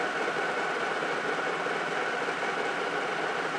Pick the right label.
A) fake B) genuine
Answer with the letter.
B